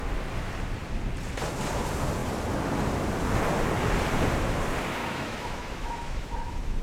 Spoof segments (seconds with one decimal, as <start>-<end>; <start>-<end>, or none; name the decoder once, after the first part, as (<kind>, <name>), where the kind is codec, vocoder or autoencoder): 5.0-6.8 (autoencoder, DAC-VAE)